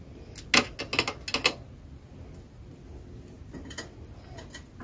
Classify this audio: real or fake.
real